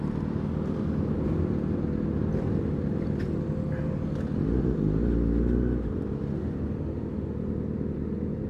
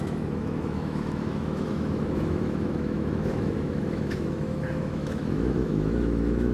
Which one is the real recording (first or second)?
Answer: first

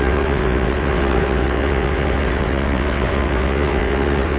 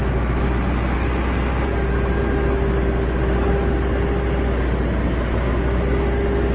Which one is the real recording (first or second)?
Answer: second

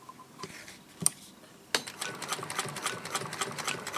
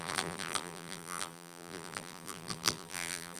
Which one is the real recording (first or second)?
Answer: first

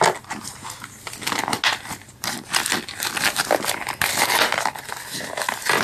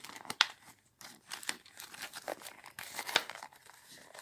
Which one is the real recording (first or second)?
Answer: first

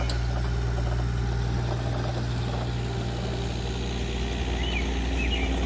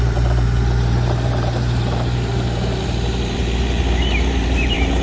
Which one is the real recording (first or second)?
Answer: first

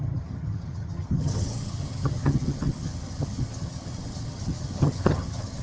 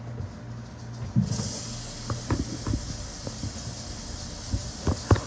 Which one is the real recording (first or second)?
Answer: second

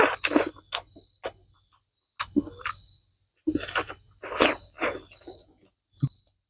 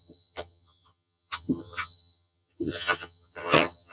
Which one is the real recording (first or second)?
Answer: first